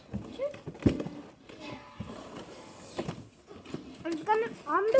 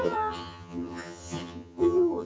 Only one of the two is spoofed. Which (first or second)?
second